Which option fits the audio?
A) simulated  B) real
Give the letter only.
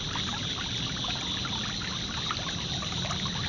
B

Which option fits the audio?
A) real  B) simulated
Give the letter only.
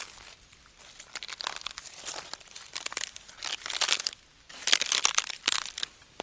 A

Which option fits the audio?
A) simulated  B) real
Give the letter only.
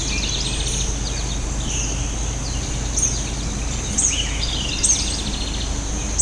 B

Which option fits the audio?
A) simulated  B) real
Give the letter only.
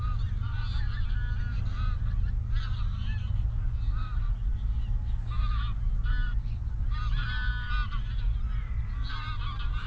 B